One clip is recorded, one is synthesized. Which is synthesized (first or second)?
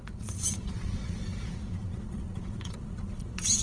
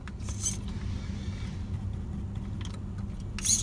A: first